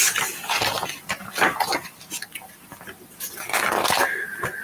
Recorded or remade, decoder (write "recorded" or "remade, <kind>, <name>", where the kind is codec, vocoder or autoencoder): recorded